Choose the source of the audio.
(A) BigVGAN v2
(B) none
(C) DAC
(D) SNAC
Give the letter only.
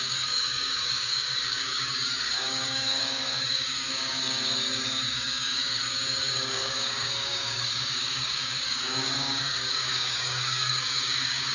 C